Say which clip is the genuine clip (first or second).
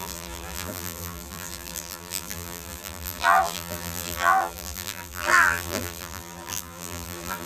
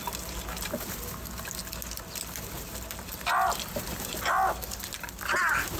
second